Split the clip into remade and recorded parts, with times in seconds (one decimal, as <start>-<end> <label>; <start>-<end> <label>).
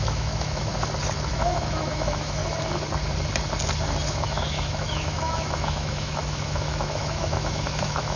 0.0-0.7 remade; 0.7-1.3 recorded; 1.3-2.4 remade; 2.4-4.1 recorded; 4.1-8.2 remade